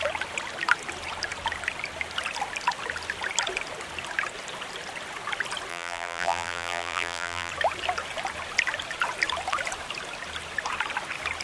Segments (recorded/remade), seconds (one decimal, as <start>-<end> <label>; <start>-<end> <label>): 0.0-5.7 recorded; 5.7-7.5 remade; 7.5-11.4 recorded